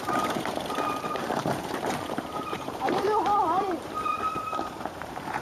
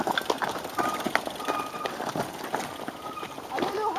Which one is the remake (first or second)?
first